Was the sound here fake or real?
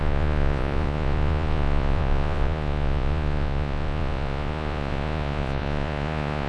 fake